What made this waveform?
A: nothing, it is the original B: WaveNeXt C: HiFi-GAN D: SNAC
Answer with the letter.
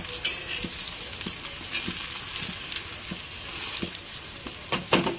A